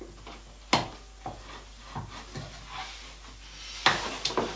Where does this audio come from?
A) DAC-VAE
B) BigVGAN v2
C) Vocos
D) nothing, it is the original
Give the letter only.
D